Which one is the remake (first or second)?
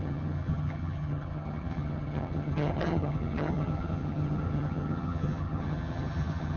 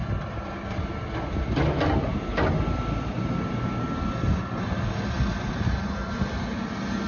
first